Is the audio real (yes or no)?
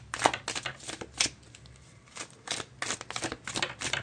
yes